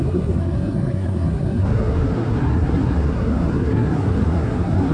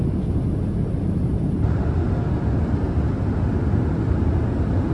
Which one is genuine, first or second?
second